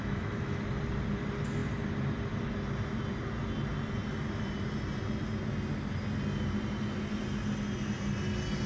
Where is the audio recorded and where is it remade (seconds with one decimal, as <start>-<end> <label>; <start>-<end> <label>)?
0.0-0.6 remade; 0.6-8.7 recorded